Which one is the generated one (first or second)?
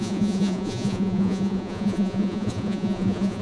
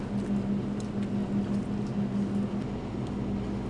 first